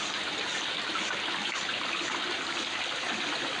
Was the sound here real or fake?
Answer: real